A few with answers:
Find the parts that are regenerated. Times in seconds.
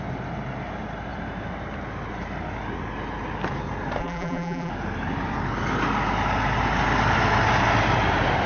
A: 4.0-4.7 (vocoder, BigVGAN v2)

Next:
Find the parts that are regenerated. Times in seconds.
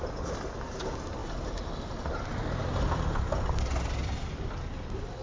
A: none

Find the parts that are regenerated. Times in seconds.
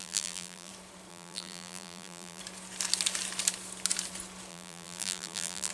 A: 0.0-0.7 (vocoder, BigVGAN v2); 1.1-2.4; 4.5-5.7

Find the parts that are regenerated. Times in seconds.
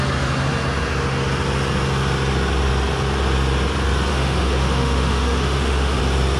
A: 4.1-6.0 (autoencoder, DAC-VAE)